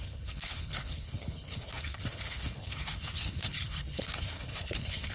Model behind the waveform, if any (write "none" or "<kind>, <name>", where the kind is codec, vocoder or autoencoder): codec, HILCodec